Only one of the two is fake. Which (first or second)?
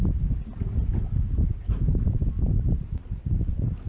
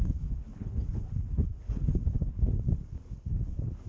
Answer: second